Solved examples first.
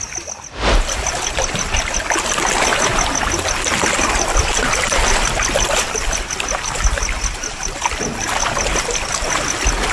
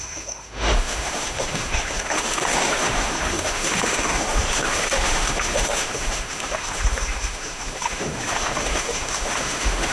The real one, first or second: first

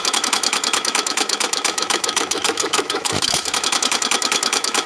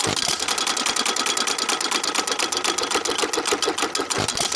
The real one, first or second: second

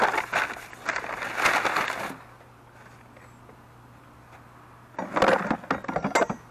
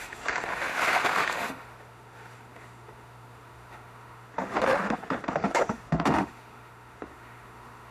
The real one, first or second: first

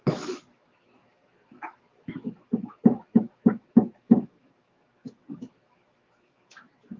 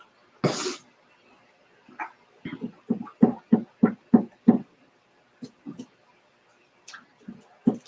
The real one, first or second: second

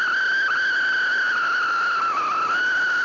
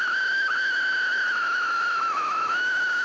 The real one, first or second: first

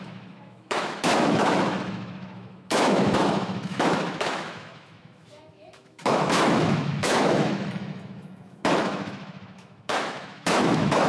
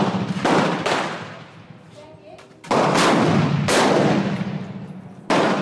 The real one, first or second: second